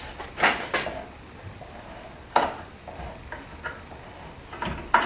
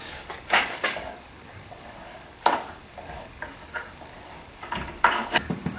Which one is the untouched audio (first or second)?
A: first